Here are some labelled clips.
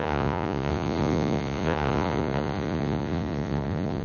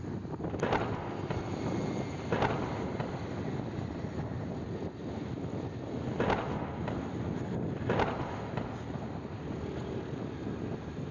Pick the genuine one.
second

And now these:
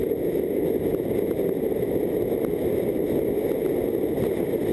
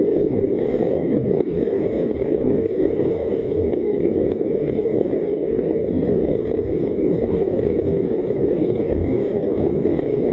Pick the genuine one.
first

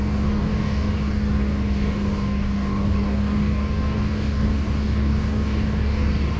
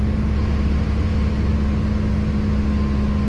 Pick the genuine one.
second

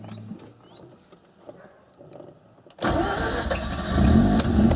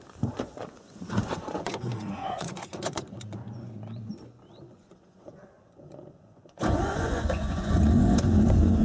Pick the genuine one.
first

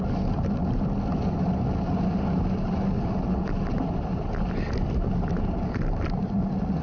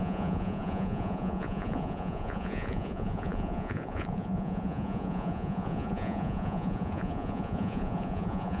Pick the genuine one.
first